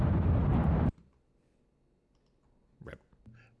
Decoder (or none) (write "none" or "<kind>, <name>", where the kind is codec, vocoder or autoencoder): none